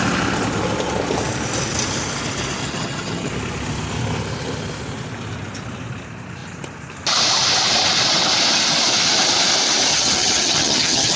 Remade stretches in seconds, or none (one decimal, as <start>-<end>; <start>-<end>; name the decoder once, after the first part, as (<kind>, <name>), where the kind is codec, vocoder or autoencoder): 2.6-3.3 (vocoder, HiFi-GAN); 9.9-11.2